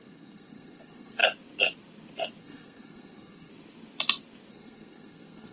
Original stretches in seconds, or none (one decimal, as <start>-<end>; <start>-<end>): 1.2-2.4; 3.5-4.5